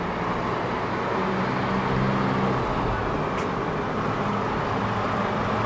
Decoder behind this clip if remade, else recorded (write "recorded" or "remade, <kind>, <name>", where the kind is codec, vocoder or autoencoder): recorded